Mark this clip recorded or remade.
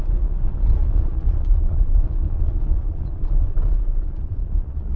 remade